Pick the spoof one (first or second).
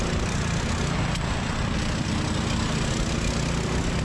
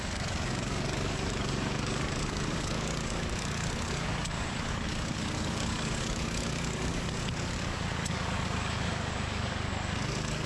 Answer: second